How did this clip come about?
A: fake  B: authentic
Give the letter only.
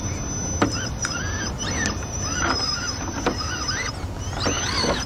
B